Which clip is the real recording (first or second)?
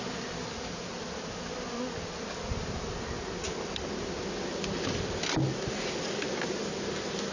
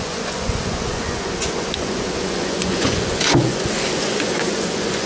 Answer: first